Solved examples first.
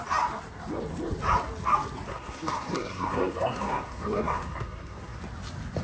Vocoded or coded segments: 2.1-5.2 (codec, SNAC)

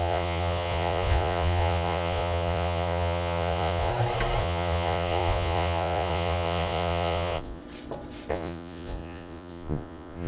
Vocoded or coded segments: 0.0-3.9 (vocoder, Vocos); 4.4-7.6; 8.3-10.3

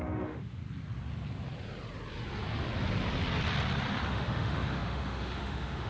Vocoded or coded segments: 0.0-0.6 (autoencoder, DAC-VAE); 4.1-5.9

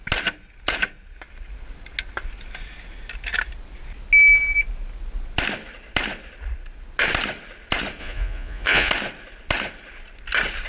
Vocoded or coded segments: 8.0-8.9 (vocoder, Vocos)